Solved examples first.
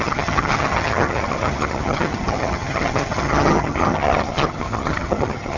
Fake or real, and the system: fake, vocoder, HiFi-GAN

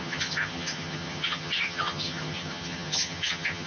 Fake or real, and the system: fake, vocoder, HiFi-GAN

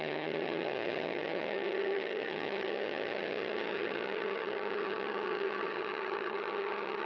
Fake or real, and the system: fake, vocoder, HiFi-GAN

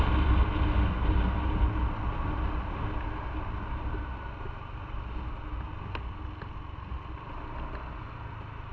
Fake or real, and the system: real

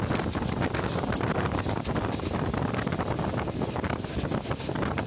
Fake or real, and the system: real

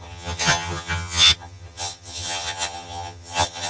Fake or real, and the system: fake, vocoder, HiFi-GAN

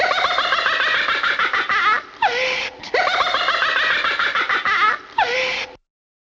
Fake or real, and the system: real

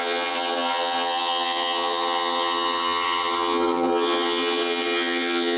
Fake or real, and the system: fake, vocoder, HiFi-GAN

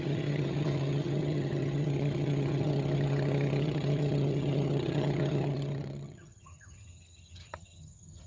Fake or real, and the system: fake, vocoder, HiFi-GAN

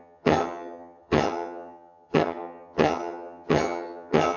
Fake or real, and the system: fake, vocoder, HiFi-GAN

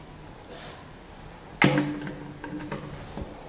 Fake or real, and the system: real